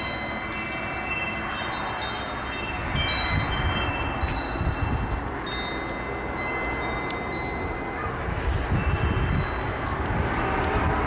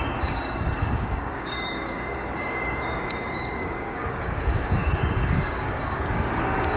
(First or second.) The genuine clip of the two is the first